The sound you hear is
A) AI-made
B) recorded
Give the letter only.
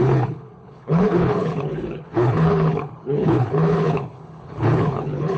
A